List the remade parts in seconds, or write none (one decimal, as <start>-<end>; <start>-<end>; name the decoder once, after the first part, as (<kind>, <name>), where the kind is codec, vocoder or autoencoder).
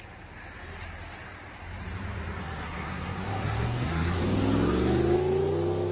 2.4-4.2 (codec, SNAC)